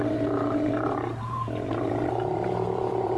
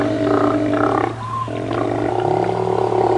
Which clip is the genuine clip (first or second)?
second